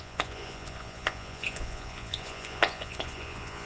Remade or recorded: remade